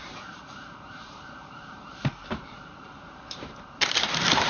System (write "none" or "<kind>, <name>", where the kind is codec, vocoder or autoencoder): vocoder, BigVGAN v2